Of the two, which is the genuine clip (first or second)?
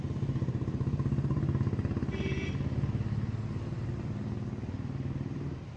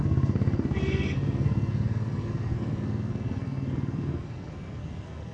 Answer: first